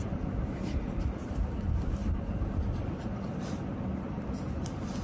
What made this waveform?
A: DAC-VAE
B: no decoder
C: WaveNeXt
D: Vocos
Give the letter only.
B